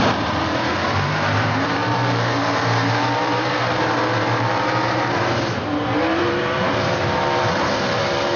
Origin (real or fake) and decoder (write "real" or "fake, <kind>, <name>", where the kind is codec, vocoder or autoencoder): fake, vocoder, BigVGAN v2